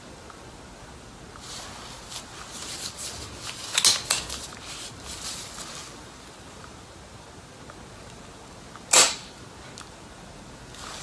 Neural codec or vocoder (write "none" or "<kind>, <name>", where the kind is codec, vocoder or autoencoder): none